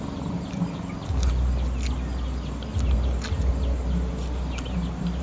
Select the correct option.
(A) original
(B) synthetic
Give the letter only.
A